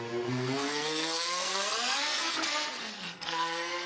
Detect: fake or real fake